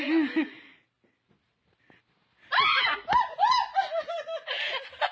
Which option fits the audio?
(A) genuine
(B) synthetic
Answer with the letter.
A